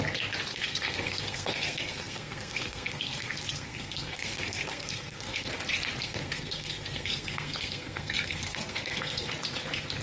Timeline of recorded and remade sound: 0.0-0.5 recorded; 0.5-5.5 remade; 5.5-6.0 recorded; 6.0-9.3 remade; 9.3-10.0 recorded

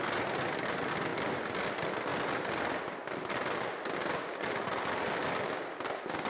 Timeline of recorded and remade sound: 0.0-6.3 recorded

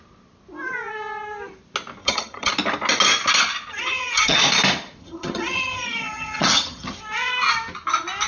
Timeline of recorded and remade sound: 0.0-2.0 recorded; 2.0-2.5 remade; 2.5-3.7 recorded; 3.7-4.4 remade; 4.4-5.0 recorded; 5.0-7.0 remade; 7.0-8.3 recorded

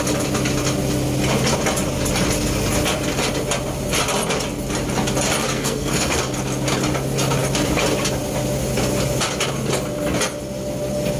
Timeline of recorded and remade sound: 0.0-5.4 recorded; 5.4-6.2 remade; 6.2-11.2 recorded

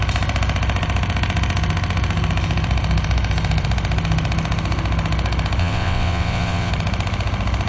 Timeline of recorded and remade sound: 0.0-5.6 recorded; 5.6-6.7 remade; 6.7-7.7 recorded

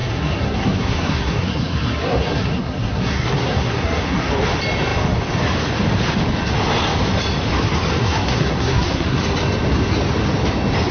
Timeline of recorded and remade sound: 0.0-4.3 remade; 4.3-8.0 recorded; 8.0-9.2 remade; 9.2-10.9 recorded

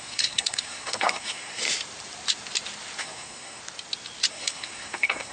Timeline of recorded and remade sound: 0.0-1.6 remade; 1.6-3.0 recorded; 3.0-3.6 remade; 3.6-4.3 recorded; 4.3-5.3 remade